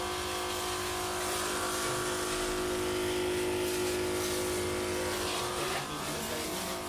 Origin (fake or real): real